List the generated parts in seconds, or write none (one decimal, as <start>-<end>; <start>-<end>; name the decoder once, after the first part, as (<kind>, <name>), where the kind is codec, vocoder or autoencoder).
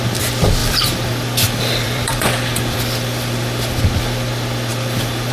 0.6-3.8 (vocoder, BigVGAN v2); 4.7-5.3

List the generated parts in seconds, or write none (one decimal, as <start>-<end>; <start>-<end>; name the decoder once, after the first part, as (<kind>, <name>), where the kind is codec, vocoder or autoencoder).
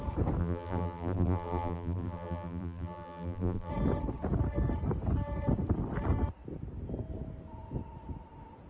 0.4-3.7 (vocoder, BigVGAN v2)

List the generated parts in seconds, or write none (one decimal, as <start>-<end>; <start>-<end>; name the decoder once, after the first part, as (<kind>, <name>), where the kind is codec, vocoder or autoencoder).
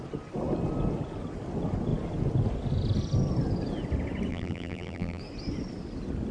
4.3-5.2 (vocoder, BigVGAN v2)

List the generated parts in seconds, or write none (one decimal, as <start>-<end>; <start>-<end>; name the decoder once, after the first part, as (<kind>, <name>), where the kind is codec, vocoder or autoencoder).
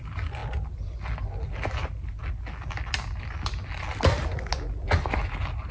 none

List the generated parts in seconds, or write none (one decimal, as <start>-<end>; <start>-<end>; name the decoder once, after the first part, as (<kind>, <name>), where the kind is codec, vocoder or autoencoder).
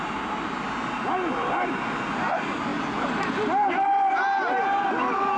2.7-4.9 (vocoder, BigVGAN v2)